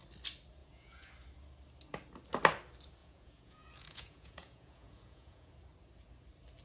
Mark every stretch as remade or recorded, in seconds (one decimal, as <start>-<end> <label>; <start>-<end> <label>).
0.0-0.6 recorded; 0.6-1.1 remade; 1.1-3.0 recorded; 3.0-5.5 remade; 5.5-6.6 recorded